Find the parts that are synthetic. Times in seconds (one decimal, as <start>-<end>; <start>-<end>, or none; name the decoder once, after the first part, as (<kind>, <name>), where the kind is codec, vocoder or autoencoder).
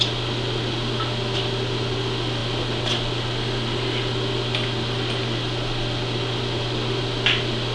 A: none